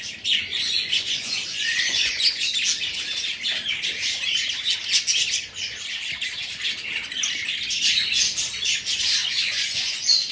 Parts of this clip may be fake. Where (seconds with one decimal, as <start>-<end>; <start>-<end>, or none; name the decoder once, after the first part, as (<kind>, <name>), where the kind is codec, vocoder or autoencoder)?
0.5-2.5 (vocoder, Vocos); 9.2-10.3